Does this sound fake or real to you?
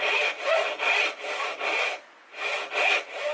real